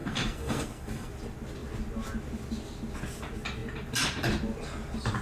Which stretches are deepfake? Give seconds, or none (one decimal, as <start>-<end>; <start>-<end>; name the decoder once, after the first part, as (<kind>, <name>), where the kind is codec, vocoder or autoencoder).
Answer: 0.0-1.1 (codec, SNAC)